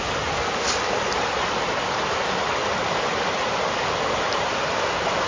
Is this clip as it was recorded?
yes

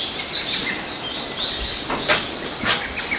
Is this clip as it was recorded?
yes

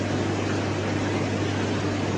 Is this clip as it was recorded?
yes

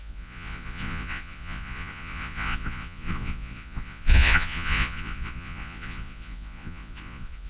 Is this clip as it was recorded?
no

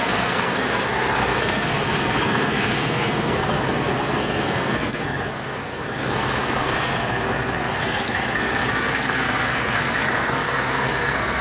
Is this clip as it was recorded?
no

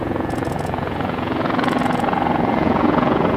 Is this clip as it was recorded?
no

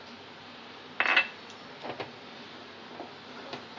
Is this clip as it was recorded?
yes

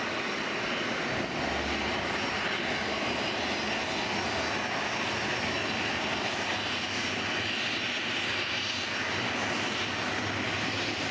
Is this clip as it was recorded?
yes